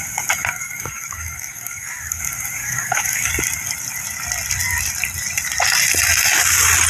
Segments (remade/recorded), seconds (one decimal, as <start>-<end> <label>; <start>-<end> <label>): 0.0-0.5 recorded; 0.5-2.2 remade; 2.2-2.6 recorded; 2.6-3.3 remade; 3.3-6.9 recorded